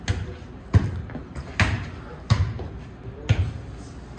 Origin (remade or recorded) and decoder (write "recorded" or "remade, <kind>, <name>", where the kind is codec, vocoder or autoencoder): recorded